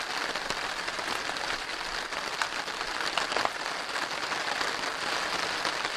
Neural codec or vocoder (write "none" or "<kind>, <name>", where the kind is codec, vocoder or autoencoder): none